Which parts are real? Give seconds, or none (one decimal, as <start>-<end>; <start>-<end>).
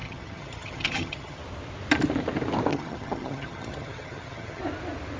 1.4-2.7; 4.6-5.2